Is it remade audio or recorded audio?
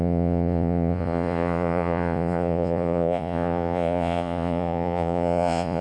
remade